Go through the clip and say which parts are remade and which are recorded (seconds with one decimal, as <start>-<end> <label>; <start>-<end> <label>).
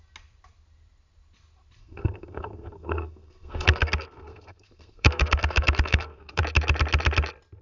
0.0-1.8 recorded; 1.8-6.4 remade; 6.4-7.6 recorded